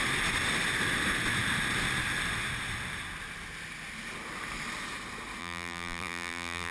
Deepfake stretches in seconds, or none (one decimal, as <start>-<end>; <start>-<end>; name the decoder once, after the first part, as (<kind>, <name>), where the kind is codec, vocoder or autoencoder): 5.4-6.7 (vocoder, BigVGAN v2)

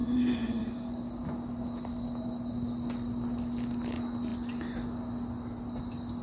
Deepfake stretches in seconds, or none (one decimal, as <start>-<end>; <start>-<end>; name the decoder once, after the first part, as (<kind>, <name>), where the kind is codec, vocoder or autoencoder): none

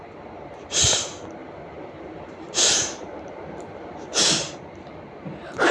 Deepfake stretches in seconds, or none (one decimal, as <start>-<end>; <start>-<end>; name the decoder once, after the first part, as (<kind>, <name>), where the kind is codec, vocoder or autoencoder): 1.4-4.6 (vocoder, BigVGAN v2)

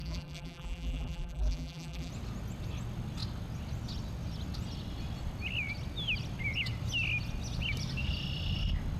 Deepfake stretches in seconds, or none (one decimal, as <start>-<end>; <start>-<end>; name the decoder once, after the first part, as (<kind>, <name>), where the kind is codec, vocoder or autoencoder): 0.0-2.1 (vocoder, BigVGAN v2)